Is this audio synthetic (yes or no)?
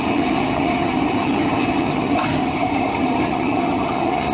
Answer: yes